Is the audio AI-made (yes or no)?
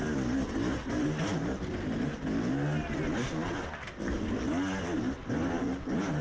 no